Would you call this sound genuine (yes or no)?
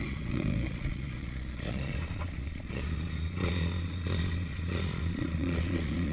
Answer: no